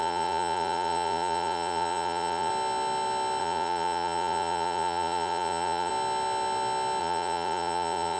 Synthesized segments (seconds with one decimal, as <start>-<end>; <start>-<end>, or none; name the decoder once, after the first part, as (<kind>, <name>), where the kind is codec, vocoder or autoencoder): 0.0-2.5 (vocoder, Vocos); 3.4-5.9; 7.0-8.2